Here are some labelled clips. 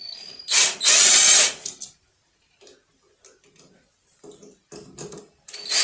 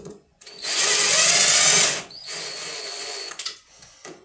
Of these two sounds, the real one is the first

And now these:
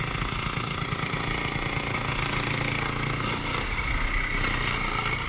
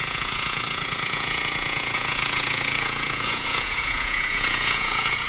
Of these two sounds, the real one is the first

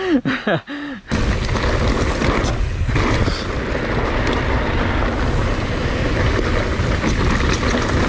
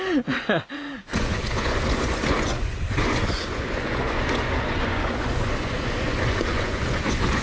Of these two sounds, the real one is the first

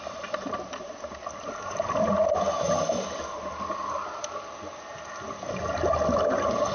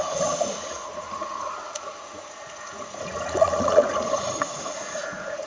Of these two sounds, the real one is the first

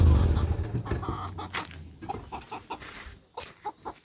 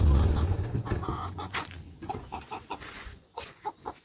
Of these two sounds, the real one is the first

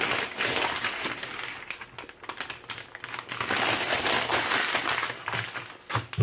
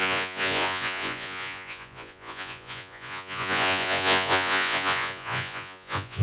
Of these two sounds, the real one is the first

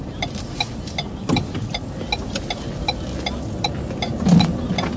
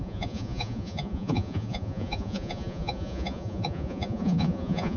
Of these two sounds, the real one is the first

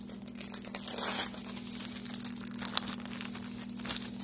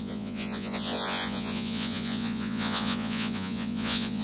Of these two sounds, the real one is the first